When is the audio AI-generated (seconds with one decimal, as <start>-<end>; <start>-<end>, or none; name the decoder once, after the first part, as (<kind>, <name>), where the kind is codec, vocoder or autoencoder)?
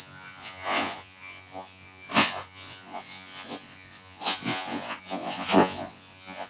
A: 0.0-6.5 (vocoder, Vocos)